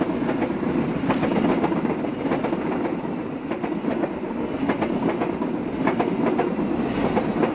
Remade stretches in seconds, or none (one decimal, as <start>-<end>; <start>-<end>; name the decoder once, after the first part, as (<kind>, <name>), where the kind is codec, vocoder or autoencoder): none